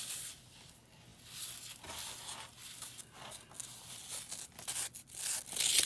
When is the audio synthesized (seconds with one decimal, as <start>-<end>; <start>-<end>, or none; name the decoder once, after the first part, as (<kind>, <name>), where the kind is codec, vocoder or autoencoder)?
none